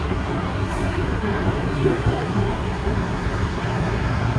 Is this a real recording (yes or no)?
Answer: no